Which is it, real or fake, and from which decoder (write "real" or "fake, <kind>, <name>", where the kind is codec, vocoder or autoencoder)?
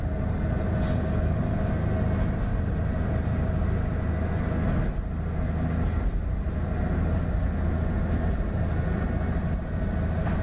real